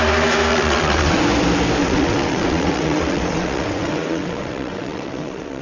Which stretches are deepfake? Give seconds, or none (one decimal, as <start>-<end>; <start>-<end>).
0.5-1.2; 1.8-5.6